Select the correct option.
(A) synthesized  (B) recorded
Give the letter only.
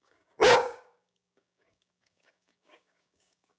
A